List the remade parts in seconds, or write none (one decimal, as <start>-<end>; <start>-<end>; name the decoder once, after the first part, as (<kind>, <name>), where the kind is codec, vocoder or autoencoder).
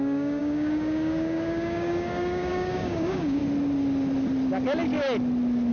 0.0-3.4 (codec, DAC)